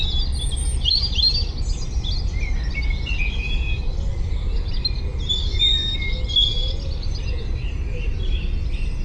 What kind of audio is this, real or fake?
real